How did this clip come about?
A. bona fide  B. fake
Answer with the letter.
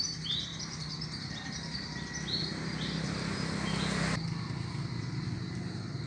A